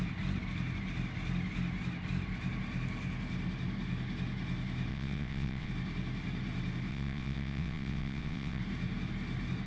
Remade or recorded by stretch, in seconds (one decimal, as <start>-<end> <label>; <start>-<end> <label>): 0.0-4.9 recorded; 4.9-5.7 remade; 5.7-6.9 recorded; 6.9-8.6 remade; 8.6-9.7 recorded